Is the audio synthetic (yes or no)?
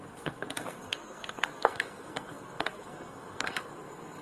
yes